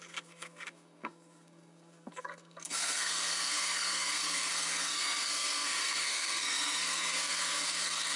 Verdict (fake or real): fake